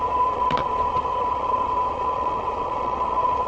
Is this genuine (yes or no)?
no